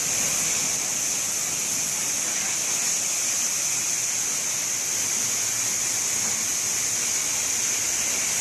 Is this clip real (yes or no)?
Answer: yes